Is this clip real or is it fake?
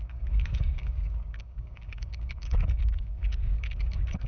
fake